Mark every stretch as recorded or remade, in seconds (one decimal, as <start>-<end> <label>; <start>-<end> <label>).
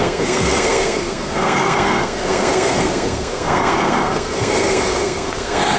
0.0-5.8 remade